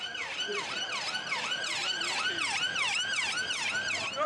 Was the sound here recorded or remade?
remade